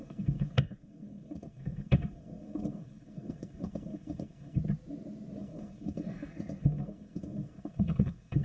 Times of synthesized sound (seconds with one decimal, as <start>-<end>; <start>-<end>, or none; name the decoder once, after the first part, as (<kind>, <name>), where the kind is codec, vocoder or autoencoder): 0.0-4.6 (codec, SNAC); 5.4-8.4